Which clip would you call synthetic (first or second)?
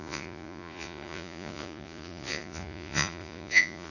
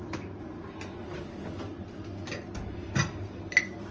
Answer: first